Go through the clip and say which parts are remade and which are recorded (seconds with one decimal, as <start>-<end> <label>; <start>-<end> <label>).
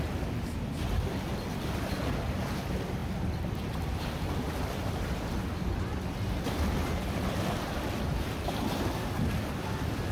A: 0.0-10.1 recorded